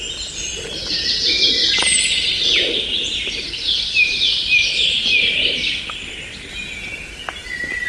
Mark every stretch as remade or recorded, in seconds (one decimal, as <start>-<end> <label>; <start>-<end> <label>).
0.0-1.6 recorded; 1.6-5.8 remade; 5.8-7.9 recorded